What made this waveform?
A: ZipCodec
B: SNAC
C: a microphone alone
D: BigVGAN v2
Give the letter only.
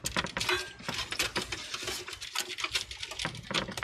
C